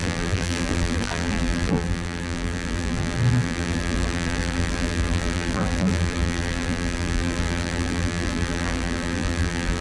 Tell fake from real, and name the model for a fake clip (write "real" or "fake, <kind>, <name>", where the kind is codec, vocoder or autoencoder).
fake, vocoder, BigVGAN v2